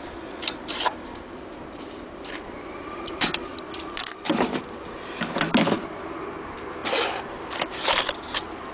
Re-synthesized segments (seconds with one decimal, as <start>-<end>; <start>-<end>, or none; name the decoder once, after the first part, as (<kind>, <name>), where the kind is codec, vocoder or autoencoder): 0.0-8.7 (vocoder, BigVGAN v2)